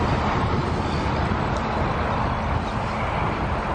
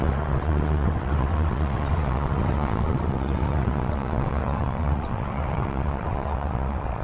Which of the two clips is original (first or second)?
first